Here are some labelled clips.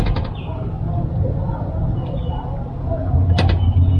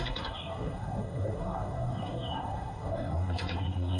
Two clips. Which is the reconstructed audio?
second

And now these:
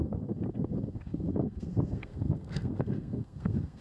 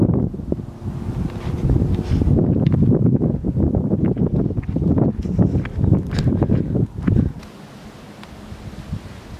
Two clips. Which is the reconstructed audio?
first